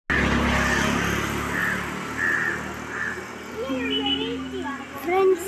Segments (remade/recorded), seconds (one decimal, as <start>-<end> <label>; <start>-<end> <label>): 0.0-5.5 recorded